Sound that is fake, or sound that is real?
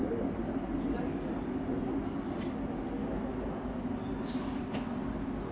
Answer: real